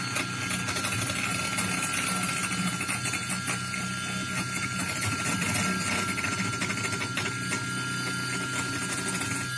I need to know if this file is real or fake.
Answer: real